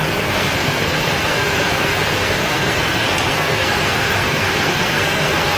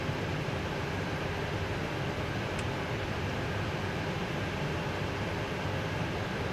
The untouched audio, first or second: second